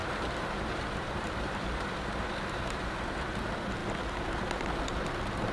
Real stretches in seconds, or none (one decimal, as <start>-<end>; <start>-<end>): 3.3-5.5